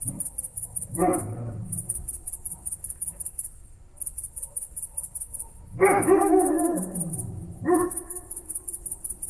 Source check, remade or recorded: remade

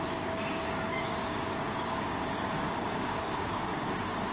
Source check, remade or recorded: remade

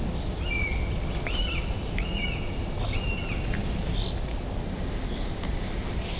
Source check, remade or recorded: recorded